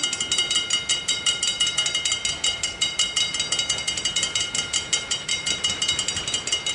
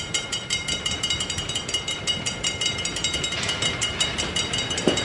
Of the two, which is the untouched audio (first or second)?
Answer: first